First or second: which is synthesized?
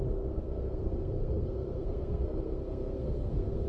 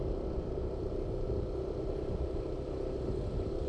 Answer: first